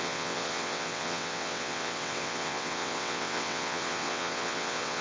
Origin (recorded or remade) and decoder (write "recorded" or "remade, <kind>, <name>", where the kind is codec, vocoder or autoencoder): remade, vocoder, WaveNeXt